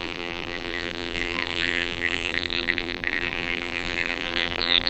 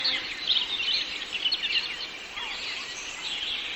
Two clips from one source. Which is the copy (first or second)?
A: first